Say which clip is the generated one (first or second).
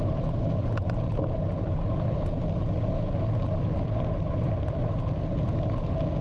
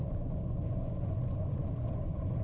second